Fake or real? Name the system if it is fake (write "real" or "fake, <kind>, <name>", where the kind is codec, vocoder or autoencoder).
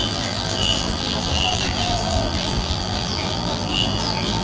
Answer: fake, vocoder, BigVGAN v2